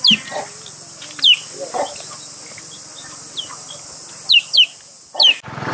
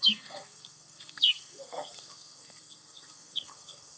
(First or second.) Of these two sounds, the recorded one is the first